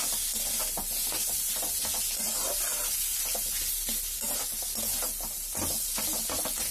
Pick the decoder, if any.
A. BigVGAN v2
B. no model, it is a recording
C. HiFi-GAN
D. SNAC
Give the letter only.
B